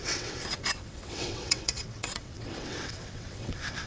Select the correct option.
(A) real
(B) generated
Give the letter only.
B